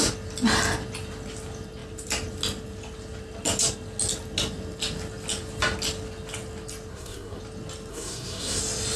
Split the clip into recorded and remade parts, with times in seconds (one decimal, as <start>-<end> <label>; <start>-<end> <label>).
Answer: 0.0-6.9 recorded; 6.9-7.4 remade; 7.4-7.9 recorded; 7.9-8.6 remade; 8.6-9.0 recorded